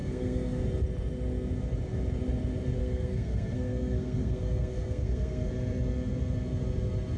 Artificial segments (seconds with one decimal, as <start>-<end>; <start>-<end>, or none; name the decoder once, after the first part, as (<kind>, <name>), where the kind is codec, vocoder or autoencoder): 0.0-0.6 (codec, SNAC); 2.8-5.5